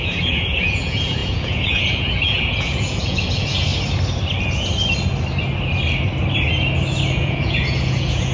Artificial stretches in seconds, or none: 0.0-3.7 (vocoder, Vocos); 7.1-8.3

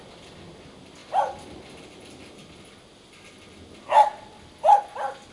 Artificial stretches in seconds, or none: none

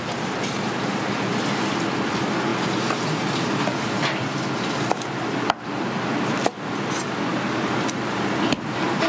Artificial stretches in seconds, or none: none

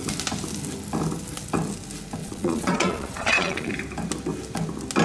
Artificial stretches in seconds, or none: 2.2-3.7 (vocoder, Vocos)

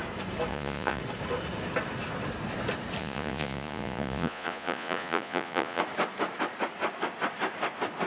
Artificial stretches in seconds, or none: 0.5-1.0 (vocoder, Vocos); 3.0-5.8

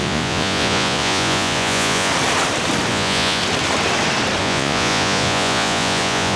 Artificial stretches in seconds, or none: 0.0-2.1 (vocoder, Vocos); 2.9-3.4; 4.4-6.4